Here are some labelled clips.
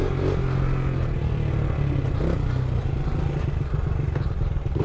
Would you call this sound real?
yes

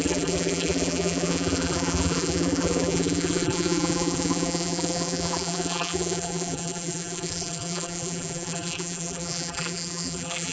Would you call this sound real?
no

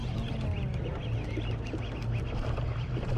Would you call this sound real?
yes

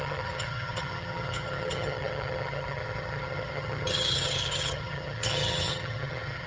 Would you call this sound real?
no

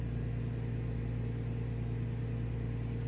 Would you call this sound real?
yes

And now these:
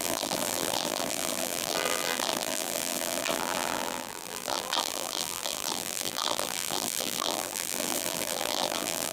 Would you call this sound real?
no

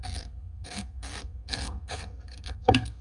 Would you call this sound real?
no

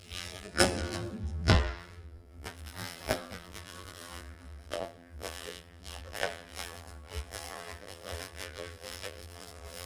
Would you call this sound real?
no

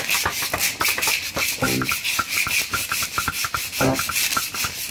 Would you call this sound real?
yes